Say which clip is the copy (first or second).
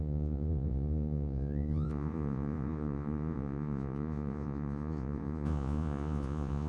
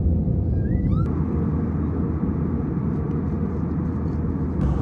first